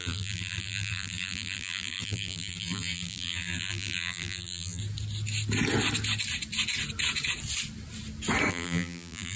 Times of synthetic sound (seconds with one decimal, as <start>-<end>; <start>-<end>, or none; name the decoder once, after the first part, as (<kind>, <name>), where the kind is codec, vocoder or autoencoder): 0.0-4.8 (vocoder, BigVGAN v2); 8.5-9.4